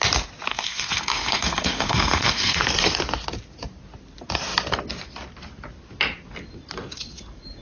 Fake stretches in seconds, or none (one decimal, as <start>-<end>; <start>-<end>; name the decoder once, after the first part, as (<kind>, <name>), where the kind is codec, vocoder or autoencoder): 0.5-2.6 (codec, SNAC)